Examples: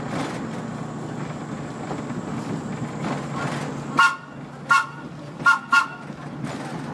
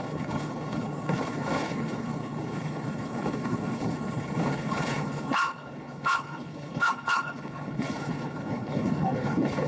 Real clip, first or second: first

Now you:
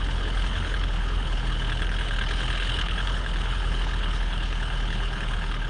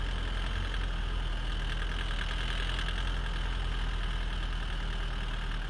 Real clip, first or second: second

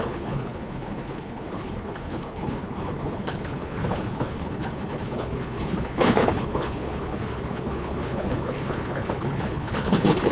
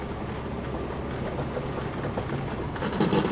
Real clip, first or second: second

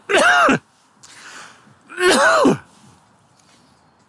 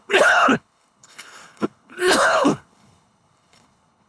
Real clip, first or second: first